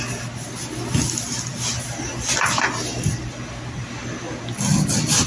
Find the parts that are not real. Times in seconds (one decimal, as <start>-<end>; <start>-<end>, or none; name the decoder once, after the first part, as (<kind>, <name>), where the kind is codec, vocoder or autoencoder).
none